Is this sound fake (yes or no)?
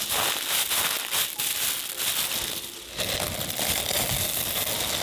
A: no